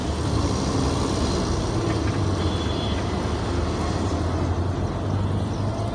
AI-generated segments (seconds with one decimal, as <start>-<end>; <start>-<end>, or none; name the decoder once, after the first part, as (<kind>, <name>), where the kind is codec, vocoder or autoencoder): none